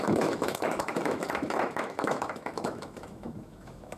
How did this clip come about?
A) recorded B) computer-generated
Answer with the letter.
B